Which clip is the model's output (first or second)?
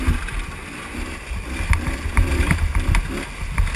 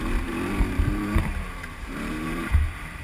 second